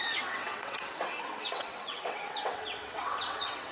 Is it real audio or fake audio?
fake